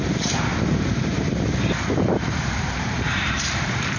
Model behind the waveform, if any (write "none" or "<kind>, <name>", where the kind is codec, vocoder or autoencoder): vocoder, BigVGAN v2